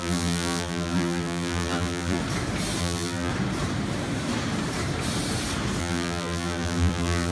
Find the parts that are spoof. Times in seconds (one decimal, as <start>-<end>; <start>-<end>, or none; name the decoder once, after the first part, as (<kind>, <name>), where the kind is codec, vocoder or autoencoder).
0.0-2.2 (vocoder, BigVGAN v2); 2.8-3.3; 5.8-7.3